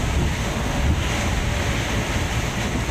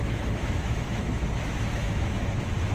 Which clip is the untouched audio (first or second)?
first